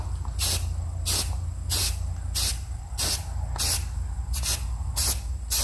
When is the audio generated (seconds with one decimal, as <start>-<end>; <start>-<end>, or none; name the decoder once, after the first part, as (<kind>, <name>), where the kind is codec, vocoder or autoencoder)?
none